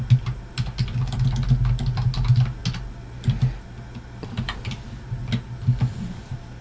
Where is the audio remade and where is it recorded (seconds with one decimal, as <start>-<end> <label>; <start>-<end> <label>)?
0.0-6.6 recorded